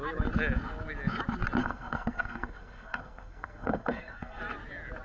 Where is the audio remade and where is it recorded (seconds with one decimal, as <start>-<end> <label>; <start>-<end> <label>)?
0.0-1.6 recorded; 1.6-4.4 remade; 4.4-5.0 recorded